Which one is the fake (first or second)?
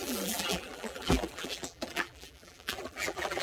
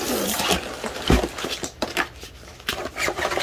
first